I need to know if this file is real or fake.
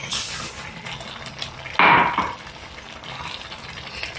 real